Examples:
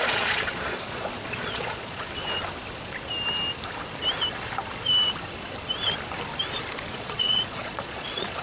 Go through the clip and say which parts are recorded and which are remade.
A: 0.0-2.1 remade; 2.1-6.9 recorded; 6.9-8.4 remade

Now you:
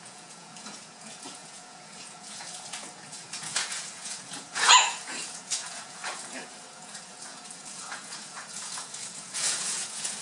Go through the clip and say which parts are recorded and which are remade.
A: 0.0-10.2 remade

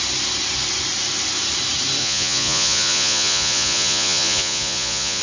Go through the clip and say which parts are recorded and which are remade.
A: 0.0-2.0 recorded; 2.0-5.2 remade

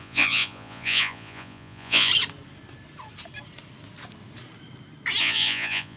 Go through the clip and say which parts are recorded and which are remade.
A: 0.0-2.1 remade; 2.1-5.2 recorded; 5.2-6.0 remade

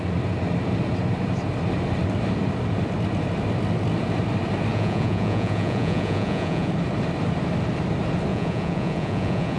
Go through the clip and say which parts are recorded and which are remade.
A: 0.0-4.7 recorded; 4.7-6.7 remade; 6.7-8.3 recorded; 8.3-9.6 remade

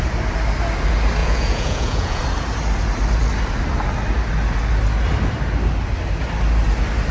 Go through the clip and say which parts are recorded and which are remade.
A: 0.0-1.2 recorded; 1.2-2.2 remade; 2.2-7.1 recorded

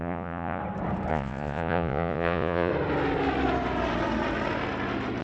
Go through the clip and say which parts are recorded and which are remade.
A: 0.0-0.6 remade; 0.6-1.1 recorded; 1.1-2.7 remade; 2.7-5.2 recorded

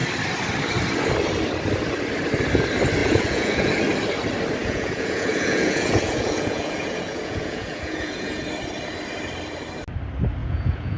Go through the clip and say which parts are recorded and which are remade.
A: 0.0-3.0 recorded; 3.0-3.7 remade; 3.7-4.6 recorded; 4.6-8.4 remade; 8.4-10.4 recorded; 10.4-11.0 remade